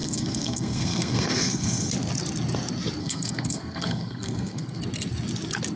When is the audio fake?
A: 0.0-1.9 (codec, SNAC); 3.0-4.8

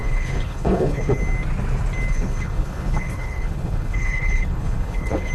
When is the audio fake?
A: 0.0-1.2 (codec, HILCodec); 2.1-5.3

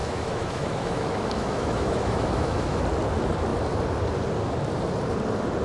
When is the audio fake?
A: 0.0-2.8 (autoencoder, DAC-VAE)

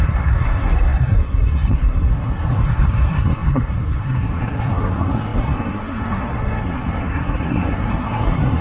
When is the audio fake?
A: 0.0-8.6 (codec, SNAC)

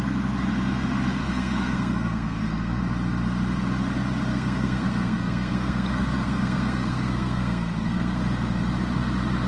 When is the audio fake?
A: 1.2-2.8 (codec, SNAC); 4.3-8.2

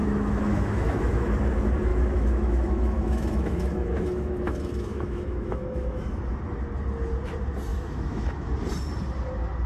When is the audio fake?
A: 0.0-1.4 (autoencoder, DAC-VAE); 1.9-6.2; 7.7-8.5

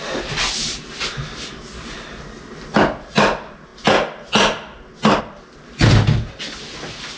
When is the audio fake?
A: none